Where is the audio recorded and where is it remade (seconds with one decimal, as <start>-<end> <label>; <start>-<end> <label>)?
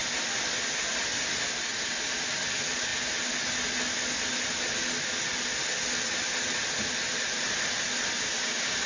0.0-8.9 recorded